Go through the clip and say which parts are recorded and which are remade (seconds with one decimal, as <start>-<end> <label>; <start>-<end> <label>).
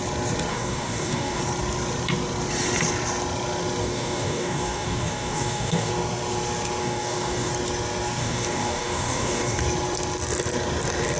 0.0-0.5 recorded; 0.5-1.4 remade; 1.4-3.8 recorded; 3.8-5.9 remade; 5.9-6.8 recorded; 6.8-7.5 remade; 7.5-8.2 recorded; 8.2-9.6 remade; 9.6-11.2 recorded